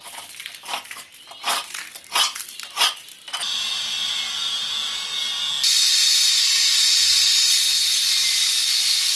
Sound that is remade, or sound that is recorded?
recorded